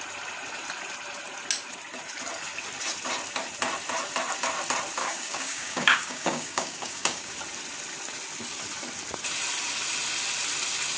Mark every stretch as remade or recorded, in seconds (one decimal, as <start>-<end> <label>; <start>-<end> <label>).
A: 0.0-5.0 recorded; 5.0-7.3 remade; 7.3-11.0 recorded